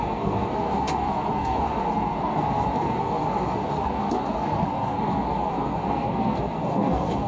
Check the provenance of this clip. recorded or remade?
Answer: remade